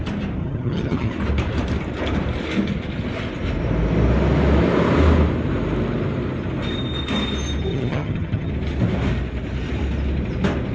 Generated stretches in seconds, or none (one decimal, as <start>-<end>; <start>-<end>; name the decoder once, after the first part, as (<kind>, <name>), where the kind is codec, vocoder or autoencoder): 0.4-1.1 (vocoder, HiFi-GAN); 7.7-8.5